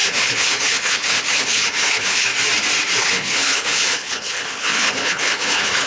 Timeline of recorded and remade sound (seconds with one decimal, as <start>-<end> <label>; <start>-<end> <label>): 0.0-2.3 remade; 2.3-3.0 recorded; 3.0-5.9 remade